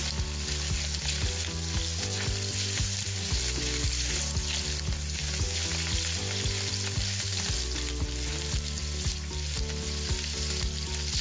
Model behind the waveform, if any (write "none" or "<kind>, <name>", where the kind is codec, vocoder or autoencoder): none